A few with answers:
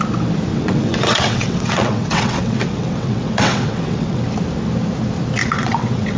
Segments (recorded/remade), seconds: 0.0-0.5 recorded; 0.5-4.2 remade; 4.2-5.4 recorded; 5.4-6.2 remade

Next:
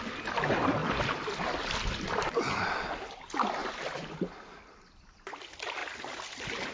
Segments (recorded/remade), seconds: 0.0-0.8 recorded; 0.8-2.8 remade; 2.8-5.8 recorded; 5.8-6.7 remade

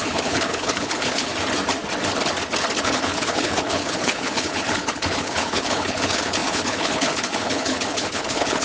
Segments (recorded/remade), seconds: 0.0-1.3 remade; 1.3-2.8 recorded; 2.8-8.6 remade

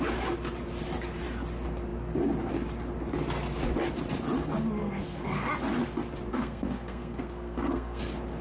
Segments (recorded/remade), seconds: 0.0-4.8 recorded; 4.8-5.5 remade; 5.5-6.3 recorded; 6.3-8.0 remade; 8.0-8.4 recorded

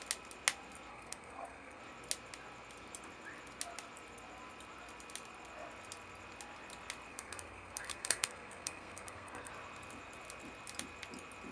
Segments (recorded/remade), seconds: 0.0-0.9 recorded; 0.9-1.8 remade; 1.8-7.1 recorded; 7.1-9.5 remade; 9.5-11.5 recorded

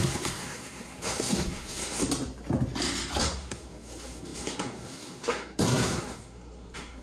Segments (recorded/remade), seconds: 0.0-2.0 remade; 2.0-3.2 recorded; 3.2-7.0 remade

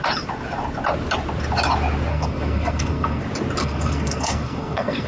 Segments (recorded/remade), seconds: 0.0-2.1 recorded; 2.1-3.2 remade; 3.2-3.6 recorded; 3.6-5.1 remade

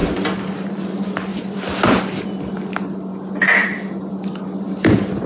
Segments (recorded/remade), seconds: 0.0-5.3 recorded